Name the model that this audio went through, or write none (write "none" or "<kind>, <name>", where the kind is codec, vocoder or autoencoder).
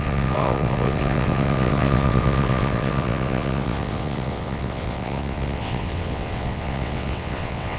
vocoder, WaveNeXt